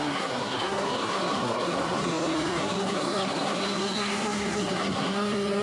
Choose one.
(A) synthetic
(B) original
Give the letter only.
A